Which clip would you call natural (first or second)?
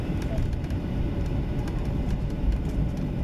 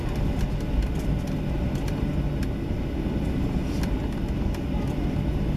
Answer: second